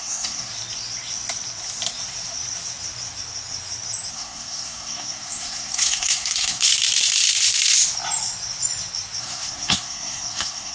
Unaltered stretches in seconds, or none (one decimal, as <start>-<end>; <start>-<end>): 0.5-4.1; 6.7-9.2